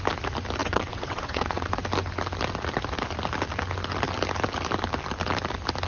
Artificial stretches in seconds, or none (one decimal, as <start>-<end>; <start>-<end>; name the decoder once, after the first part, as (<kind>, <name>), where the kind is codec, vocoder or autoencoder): 0.6-1.7 (vocoder, WaveNeXt)